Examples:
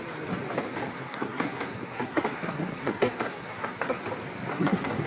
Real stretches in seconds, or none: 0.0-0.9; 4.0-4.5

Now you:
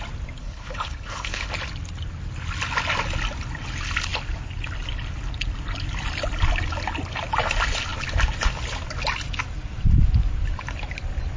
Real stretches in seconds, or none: 0.0-0.4; 1.5-11.4

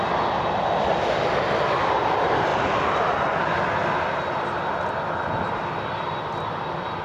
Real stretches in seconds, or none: 0.0-7.0

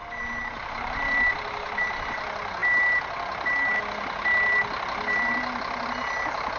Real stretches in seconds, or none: 0.0-6.6

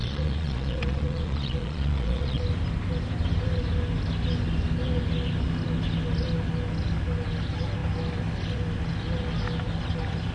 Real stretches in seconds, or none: 2.4-10.3

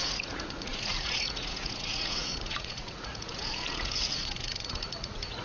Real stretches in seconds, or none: none

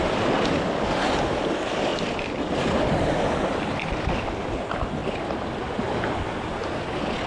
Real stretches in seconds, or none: 0.0-1.9; 4.3-7.3